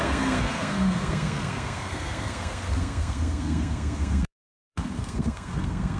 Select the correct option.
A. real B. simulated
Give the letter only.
B